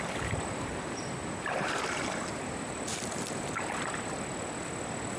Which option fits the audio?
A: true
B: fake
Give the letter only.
B